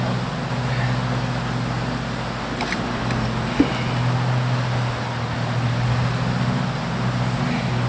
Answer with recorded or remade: recorded